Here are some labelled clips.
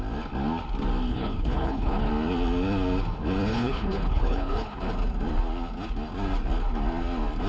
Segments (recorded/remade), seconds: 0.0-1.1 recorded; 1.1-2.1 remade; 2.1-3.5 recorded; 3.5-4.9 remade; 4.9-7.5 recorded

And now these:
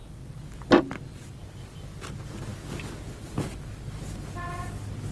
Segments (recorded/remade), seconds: 0.0-5.1 recorded

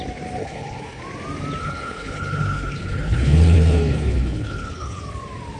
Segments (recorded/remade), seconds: 0.0-0.4 recorded; 0.4-1.0 remade; 1.0-1.6 recorded; 1.6-5.0 remade; 5.0-5.6 recorded

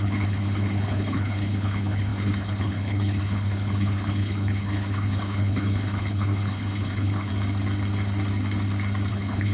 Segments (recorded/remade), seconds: 0.0-7.3 remade; 7.3-9.1 recorded; 9.1-9.5 remade

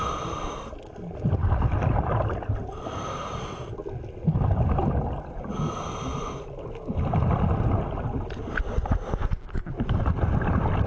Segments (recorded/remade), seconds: 0.0-10.9 recorded

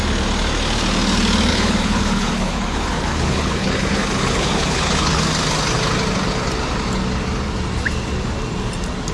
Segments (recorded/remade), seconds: 0.0-1.5 recorded; 1.5-5.2 remade; 5.2-9.1 recorded

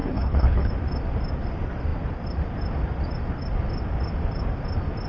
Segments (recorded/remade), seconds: 0.0-0.7 remade; 0.7-5.1 recorded